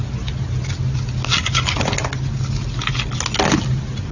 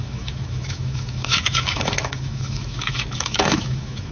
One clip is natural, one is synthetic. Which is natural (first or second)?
first